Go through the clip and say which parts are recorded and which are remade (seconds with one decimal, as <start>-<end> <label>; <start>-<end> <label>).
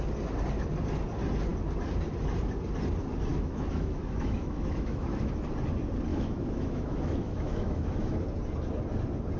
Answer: 0.0-3.3 recorded; 3.3-5.3 remade; 5.3-6.1 recorded; 6.1-8.2 remade; 8.2-9.4 recorded